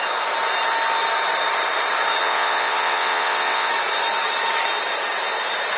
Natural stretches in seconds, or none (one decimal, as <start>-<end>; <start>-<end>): 0.0-2.2; 3.7-5.8

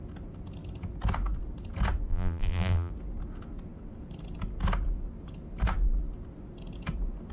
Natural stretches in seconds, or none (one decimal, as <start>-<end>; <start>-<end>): 0.0-2.1; 2.9-7.3

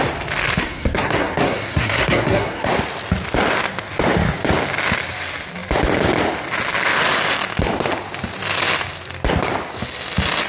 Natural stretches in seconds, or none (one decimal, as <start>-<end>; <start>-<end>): 0.0-0.6; 2.7-10.5

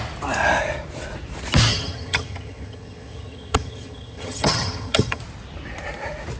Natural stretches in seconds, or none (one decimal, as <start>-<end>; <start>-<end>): 0.0-1.7; 5.2-6.4

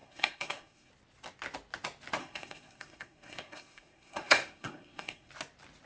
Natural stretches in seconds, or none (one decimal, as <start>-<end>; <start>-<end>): 0.9-2.2; 5.3-5.9

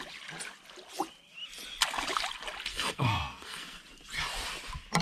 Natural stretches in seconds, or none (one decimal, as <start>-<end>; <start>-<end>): 0.0-2.7; 3.8-5.0

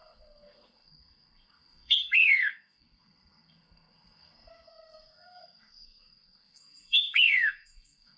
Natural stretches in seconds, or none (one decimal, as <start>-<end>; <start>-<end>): none